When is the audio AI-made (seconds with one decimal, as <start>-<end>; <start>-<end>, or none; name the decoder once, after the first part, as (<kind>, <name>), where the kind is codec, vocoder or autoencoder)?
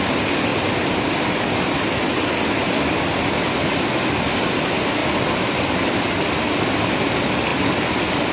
none